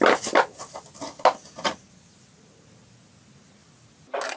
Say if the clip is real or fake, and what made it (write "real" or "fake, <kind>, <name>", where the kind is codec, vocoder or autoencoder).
real